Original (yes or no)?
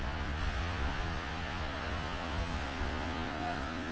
no